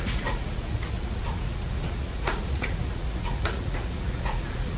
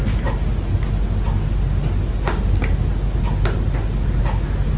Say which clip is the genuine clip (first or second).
second